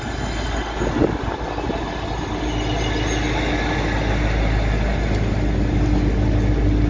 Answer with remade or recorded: recorded